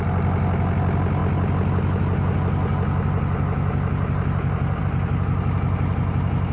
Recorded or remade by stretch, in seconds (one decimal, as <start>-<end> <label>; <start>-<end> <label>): 0.0-6.5 recorded